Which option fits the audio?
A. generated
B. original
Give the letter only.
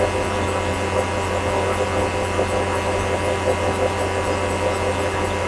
B